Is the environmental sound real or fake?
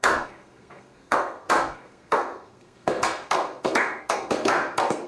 fake